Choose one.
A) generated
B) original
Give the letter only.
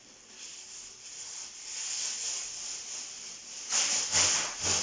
B